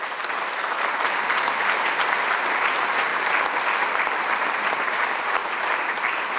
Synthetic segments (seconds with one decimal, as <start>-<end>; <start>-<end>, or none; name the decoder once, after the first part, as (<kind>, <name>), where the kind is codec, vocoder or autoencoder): 0.0-3.1 (vocoder, BigVGAN v2); 3.8-5.4